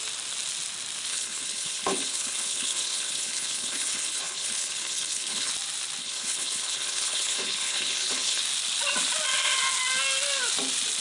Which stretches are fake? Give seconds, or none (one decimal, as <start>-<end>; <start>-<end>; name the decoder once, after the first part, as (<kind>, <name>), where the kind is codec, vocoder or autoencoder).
1.1-5.5 (codec, HILCodec); 6.0-8.4

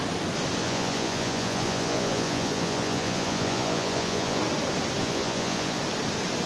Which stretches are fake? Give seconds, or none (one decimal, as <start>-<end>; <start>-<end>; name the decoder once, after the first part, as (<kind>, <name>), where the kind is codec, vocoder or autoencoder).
0.6-4.4 (vocoder, Vocos); 5.0-5.8